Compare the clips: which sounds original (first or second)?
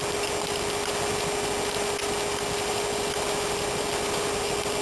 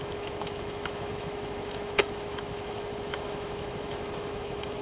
first